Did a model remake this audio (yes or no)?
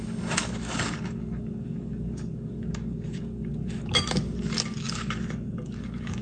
yes